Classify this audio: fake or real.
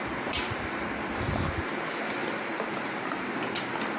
real